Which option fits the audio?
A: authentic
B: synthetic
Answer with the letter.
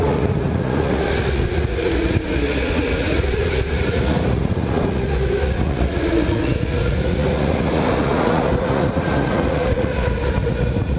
B